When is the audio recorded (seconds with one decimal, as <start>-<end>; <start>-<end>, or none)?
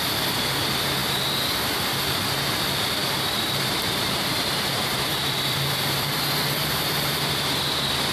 0.0-3.0; 6.2-8.1